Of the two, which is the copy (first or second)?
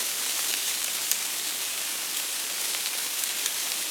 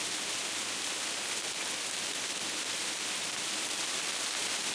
first